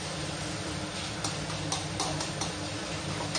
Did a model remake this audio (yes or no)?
no